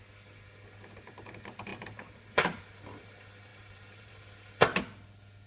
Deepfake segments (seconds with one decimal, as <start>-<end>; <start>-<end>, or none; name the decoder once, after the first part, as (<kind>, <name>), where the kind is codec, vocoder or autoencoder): 1.7-2.6 (vocoder, BigVGAN v2); 3.5-4.1

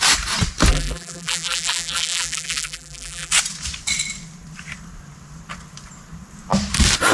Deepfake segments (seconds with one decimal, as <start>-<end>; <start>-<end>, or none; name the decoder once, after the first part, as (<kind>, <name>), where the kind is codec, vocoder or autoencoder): 0.7-3.3 (vocoder, BigVGAN v2)